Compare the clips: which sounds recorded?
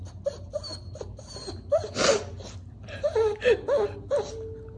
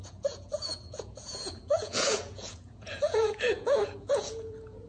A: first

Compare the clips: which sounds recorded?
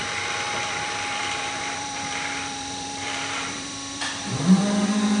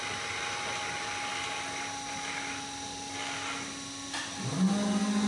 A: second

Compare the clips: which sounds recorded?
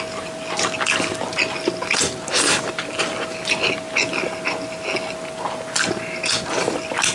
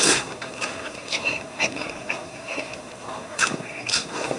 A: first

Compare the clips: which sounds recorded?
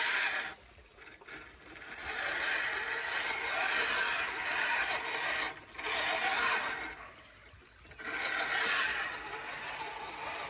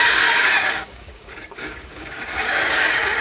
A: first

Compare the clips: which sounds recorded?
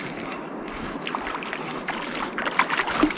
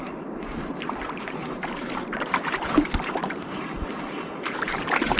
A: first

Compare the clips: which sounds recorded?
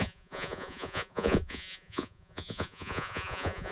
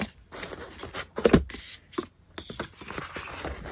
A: second